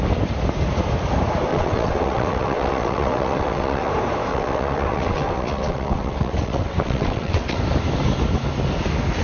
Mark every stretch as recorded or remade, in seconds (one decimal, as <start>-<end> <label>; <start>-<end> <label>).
0.0-1.5 recorded; 1.5-3.9 remade; 3.9-4.3 recorded; 4.3-7.6 remade; 7.6-9.2 recorded